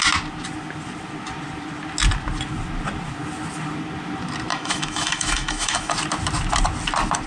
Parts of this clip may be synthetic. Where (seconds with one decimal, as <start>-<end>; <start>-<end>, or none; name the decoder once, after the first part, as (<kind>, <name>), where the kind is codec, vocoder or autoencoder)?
4.5-5.9 (autoencoder, DAC-VAE)